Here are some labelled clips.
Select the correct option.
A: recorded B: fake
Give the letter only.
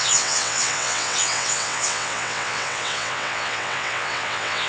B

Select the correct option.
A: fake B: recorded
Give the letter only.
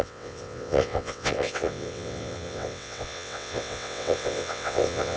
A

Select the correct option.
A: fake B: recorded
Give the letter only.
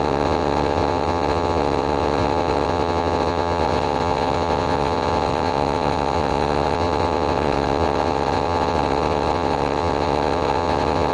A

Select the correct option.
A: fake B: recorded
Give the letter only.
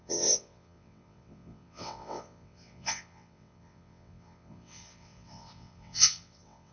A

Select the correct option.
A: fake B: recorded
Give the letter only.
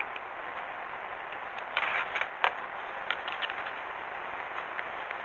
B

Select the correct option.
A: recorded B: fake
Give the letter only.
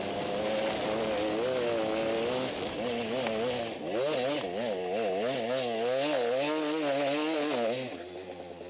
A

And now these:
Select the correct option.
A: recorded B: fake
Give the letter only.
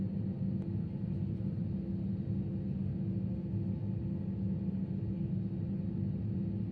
A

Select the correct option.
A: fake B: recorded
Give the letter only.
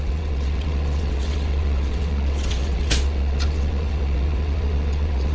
A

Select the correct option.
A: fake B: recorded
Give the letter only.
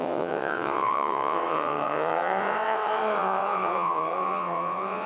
A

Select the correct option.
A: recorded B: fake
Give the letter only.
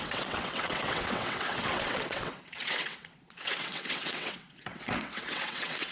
B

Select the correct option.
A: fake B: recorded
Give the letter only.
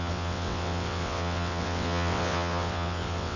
A